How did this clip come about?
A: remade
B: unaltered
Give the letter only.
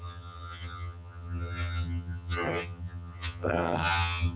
A